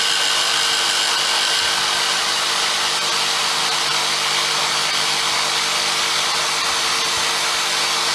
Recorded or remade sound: recorded